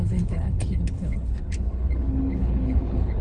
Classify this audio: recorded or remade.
remade